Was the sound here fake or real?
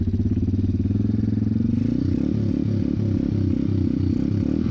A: real